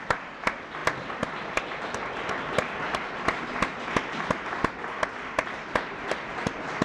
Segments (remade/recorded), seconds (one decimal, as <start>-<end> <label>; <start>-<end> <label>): 0.0-6.8 recorded